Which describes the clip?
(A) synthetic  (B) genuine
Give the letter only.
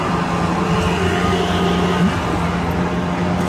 B